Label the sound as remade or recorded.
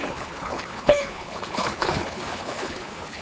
remade